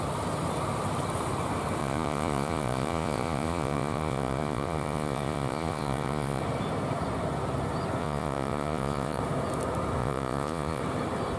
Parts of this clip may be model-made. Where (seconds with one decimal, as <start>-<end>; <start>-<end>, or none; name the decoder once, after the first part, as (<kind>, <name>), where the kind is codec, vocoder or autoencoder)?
1.8-6.4 (vocoder, Vocos); 8.0-9.2; 10.0-10.8

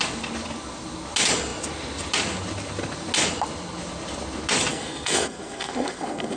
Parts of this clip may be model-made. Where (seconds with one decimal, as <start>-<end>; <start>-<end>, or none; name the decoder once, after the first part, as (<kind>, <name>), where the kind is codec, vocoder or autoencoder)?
4.7-6.4 (codec, SNAC)

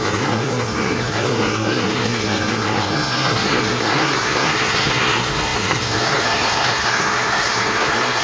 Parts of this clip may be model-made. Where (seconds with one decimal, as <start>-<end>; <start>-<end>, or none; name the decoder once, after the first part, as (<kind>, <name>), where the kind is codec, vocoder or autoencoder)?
0.0-8.2 (codec, SNAC)

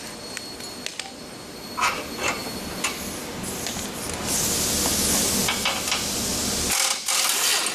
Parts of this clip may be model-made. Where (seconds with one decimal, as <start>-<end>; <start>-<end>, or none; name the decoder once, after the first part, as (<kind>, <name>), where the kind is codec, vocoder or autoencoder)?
none